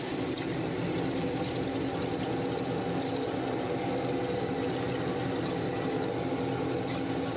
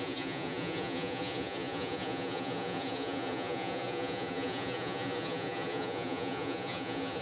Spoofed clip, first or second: second